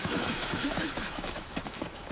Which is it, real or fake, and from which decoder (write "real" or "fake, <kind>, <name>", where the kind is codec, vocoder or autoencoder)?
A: fake, autoencoder, DAC-VAE